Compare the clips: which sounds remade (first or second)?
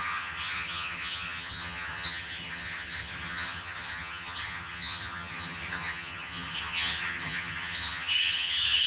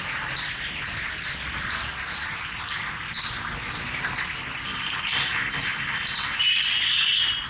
first